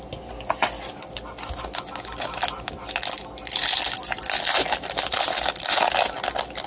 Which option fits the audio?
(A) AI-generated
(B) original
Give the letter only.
B